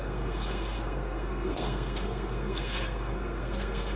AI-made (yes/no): yes